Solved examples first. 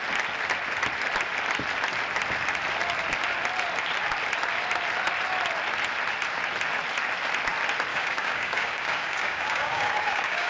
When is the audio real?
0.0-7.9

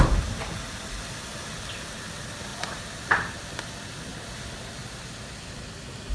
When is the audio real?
0.0-6.1

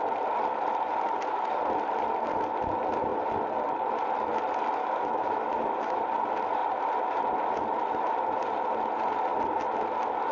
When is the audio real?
0.0-4.8; 6.0-10.3

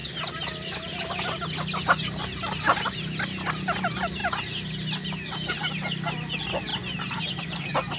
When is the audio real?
0.0-6.7; 7.4-8.0

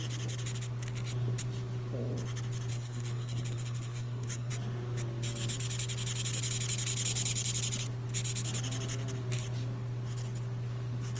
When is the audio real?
0.0-2.7; 4.5-11.2